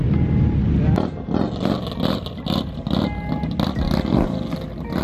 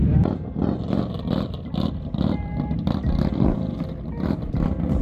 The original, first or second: first